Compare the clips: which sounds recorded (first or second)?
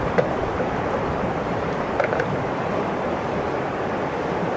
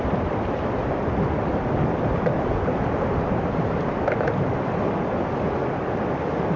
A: second